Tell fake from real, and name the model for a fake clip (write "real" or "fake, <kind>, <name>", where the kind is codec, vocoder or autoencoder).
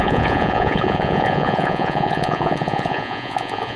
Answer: fake, vocoder, Vocos